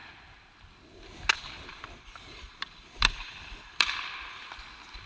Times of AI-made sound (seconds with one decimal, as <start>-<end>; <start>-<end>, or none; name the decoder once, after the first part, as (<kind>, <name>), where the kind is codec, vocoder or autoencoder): 1.7-3.9 (vocoder, BigVGAN v2)